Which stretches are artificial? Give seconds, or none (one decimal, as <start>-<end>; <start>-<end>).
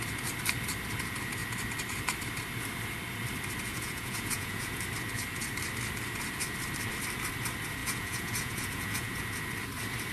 3.7-4.8; 7.8-9.2